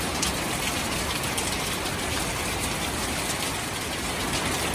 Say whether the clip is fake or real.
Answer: real